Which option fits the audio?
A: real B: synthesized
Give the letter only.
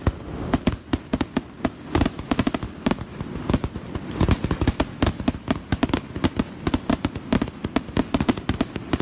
A